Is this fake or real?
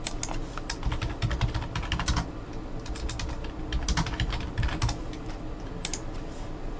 real